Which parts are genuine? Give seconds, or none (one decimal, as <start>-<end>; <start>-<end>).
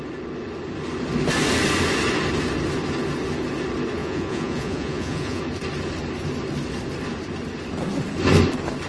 0.0-4.0; 5.4-8.9